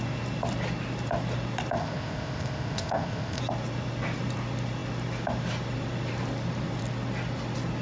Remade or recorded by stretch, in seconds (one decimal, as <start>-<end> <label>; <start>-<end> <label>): 0.0-1.8 recorded; 1.8-3.4 remade; 3.4-7.8 recorded